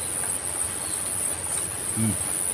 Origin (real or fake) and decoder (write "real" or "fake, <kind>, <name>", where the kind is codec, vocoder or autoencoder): real